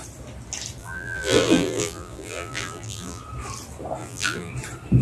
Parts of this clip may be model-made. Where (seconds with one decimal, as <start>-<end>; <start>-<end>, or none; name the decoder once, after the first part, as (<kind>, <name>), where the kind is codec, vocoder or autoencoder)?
0.8-3.2 (vocoder, BigVGAN v2); 4.0-4.5